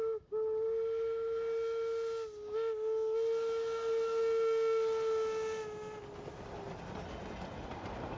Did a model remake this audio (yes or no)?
no